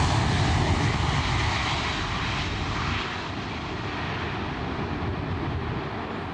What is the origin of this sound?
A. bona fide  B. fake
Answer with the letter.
A